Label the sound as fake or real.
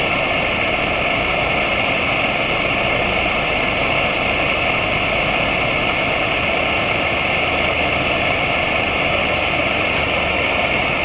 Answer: real